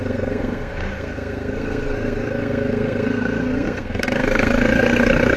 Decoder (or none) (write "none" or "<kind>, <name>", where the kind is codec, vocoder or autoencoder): codec, SNAC